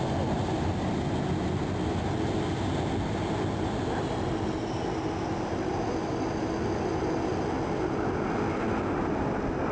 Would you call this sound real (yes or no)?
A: yes